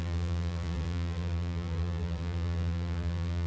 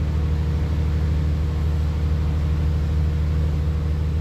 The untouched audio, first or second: second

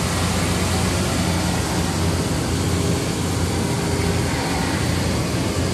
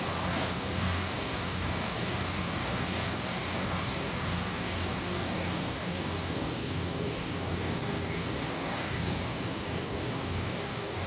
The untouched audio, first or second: first